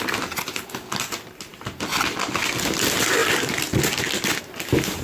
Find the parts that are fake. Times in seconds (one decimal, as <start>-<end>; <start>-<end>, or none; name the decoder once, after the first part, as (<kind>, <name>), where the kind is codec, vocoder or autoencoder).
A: none